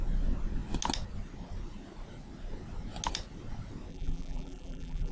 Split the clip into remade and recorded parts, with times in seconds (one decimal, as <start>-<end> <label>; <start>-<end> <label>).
0.0-3.9 recorded; 3.9-5.1 remade

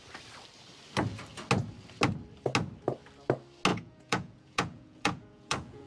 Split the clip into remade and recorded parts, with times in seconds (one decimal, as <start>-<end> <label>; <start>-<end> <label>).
0.0-3.7 recorded; 3.7-5.9 remade

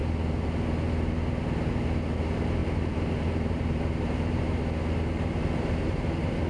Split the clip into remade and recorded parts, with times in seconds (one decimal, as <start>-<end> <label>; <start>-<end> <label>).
0.0-2.6 recorded; 2.6-4.6 remade; 4.6-6.5 recorded